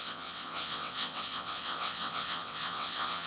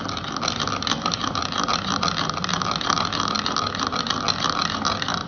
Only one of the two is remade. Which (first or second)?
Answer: first